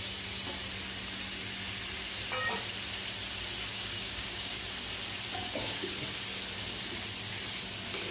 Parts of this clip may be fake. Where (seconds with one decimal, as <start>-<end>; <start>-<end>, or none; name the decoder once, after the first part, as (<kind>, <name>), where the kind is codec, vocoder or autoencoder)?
3.7-4.5 (codec, DAC); 5.4-6.0